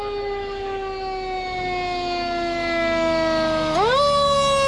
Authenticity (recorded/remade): recorded